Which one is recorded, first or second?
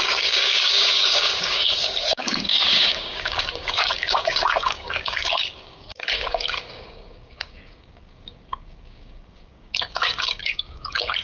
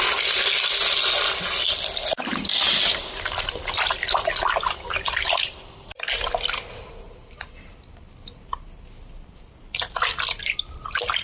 second